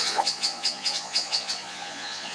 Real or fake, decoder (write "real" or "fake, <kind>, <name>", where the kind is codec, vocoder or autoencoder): fake, vocoder, Vocos